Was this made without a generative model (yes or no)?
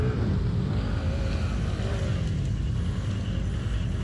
yes